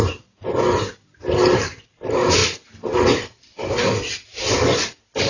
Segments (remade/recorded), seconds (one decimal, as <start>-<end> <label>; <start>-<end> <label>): 0.0-5.3 remade

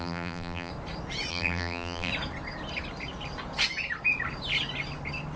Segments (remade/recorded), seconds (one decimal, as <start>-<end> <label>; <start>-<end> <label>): 0.0-0.7 remade; 0.7-1.3 recorded; 1.3-2.1 remade; 2.1-5.4 recorded

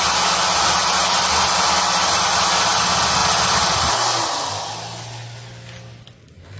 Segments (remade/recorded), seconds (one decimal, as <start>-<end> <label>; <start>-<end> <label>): 0.0-6.6 recorded

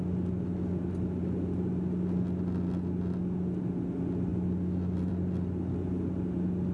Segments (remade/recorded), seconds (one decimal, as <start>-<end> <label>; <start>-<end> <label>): 0.0-6.7 recorded